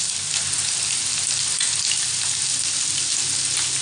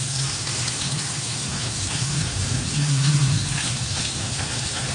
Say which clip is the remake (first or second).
second